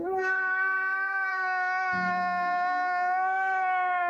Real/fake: fake